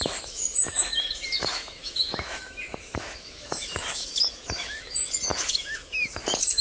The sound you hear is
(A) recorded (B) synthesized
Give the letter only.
B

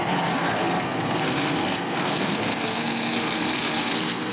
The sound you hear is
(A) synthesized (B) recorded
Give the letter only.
A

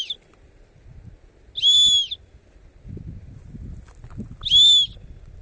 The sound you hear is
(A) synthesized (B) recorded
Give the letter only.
B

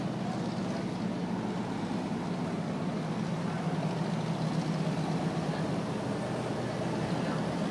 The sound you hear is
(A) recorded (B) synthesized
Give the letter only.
A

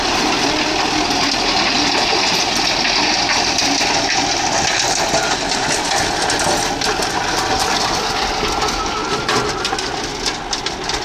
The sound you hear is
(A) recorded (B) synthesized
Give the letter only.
A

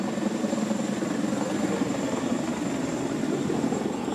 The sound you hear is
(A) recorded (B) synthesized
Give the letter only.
A